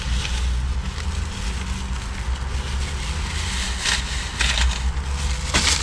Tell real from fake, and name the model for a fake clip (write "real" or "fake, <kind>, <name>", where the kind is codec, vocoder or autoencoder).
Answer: real